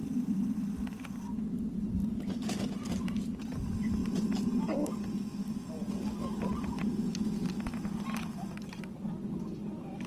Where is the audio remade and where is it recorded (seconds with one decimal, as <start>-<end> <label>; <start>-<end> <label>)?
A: 0.0-10.1 recorded